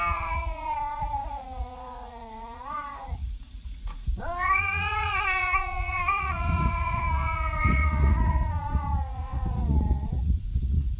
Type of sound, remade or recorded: remade